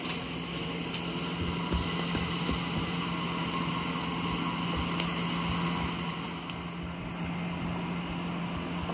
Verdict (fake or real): real